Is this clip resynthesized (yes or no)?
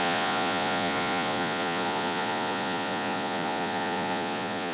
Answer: yes